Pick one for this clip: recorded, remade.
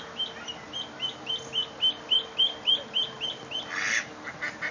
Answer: recorded